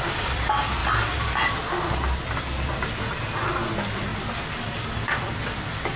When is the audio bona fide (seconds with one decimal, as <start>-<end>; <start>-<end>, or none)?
0.0-6.0